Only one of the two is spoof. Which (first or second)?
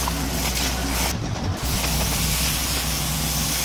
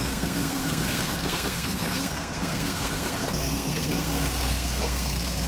second